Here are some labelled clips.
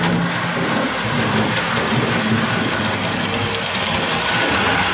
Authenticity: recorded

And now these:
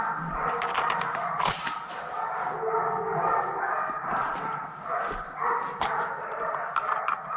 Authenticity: recorded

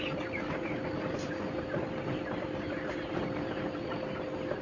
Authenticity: recorded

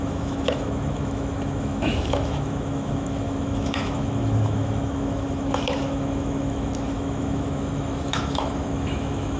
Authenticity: remade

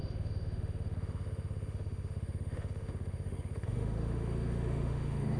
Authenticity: remade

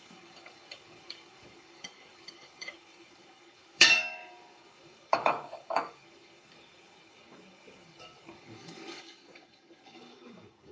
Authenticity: remade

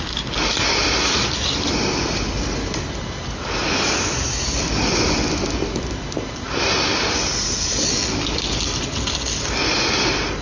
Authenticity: recorded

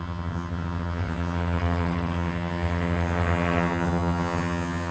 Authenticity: remade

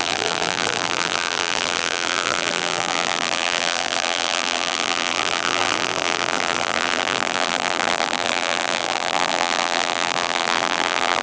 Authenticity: remade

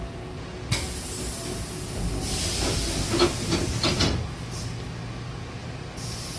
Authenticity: recorded